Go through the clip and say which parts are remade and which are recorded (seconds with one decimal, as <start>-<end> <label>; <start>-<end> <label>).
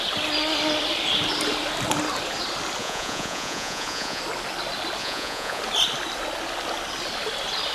0.0-2.8 recorded; 2.8-4.2 remade; 4.2-5.0 recorded; 5.0-5.6 remade; 5.6-7.7 recorded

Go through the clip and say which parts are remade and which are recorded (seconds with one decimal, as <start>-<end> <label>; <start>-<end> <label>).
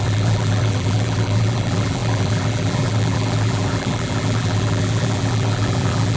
0.0-6.2 remade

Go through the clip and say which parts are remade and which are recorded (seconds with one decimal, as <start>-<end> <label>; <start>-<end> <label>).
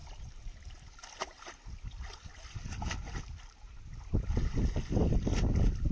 0.0-5.9 recorded